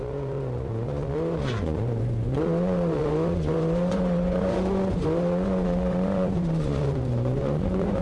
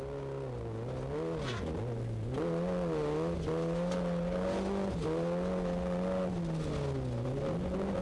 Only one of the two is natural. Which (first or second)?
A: second